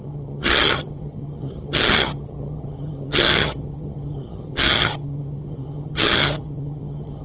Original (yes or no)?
no